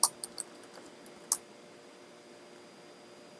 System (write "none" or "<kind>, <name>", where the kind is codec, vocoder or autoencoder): none